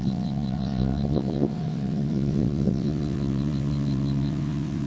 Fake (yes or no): yes